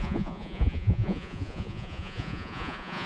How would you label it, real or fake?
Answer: fake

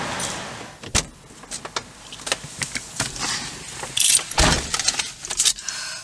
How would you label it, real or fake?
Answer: real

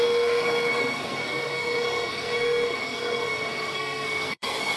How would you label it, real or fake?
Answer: fake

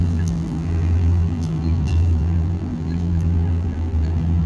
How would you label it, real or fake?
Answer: fake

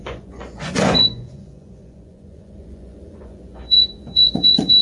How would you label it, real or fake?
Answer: fake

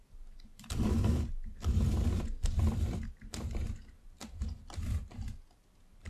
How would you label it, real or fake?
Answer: real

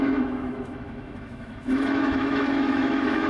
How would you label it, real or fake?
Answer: fake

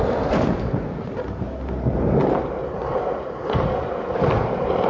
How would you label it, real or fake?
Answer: real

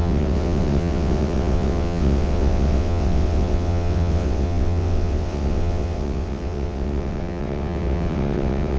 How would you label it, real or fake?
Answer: fake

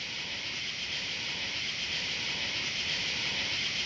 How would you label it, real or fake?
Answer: fake